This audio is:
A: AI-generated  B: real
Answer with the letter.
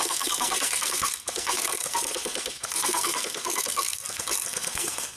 A